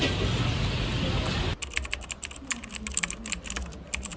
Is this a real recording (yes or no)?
yes